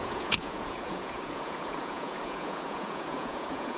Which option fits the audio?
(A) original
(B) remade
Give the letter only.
B